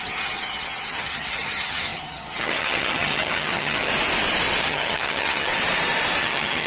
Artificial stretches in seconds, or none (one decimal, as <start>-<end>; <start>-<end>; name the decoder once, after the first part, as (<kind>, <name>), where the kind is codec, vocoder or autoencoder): 0.0-3.9 (vocoder, HiFi-GAN); 4.6-5.5; 6.2-6.7